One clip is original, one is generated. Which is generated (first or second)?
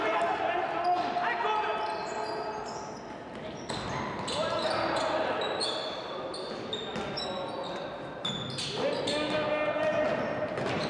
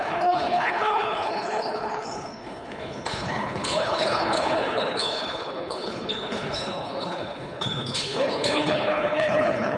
second